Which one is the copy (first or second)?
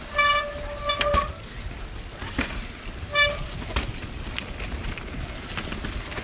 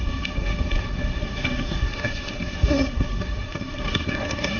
second